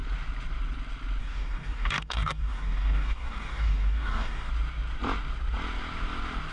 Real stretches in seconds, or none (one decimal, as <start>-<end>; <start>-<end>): 0.0-1.2; 4.5-6.5